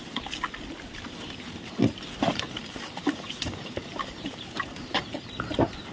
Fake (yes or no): no